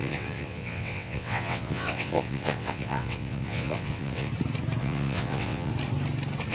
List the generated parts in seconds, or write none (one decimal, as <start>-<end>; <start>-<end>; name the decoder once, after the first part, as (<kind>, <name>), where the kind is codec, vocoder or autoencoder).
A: 0.0-4.3 (vocoder, WaveNeXt); 4.8-5.7